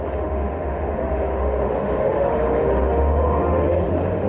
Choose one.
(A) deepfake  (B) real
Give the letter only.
A